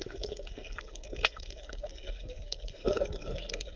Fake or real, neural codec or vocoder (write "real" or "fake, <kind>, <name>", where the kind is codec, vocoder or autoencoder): fake, codec, SNAC